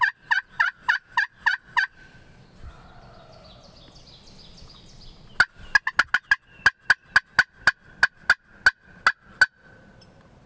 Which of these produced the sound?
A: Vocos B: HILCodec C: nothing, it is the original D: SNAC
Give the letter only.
C